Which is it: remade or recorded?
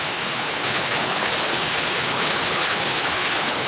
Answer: remade